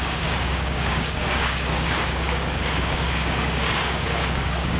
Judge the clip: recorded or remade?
remade